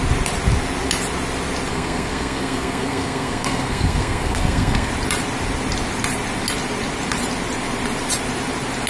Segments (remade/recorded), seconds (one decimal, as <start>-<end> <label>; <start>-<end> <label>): 0.0-1.7 recorded; 1.7-4.9 remade; 4.9-8.9 recorded